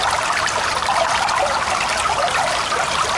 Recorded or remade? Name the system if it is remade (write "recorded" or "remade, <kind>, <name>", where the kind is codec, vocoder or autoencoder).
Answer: recorded